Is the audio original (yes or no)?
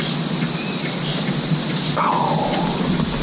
yes